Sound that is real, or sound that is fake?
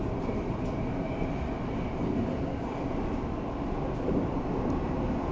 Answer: real